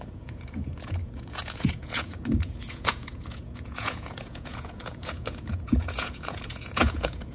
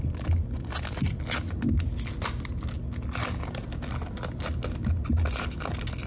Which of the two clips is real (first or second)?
second